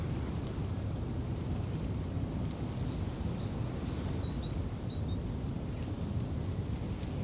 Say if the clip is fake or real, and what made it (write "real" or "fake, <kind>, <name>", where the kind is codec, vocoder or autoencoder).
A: real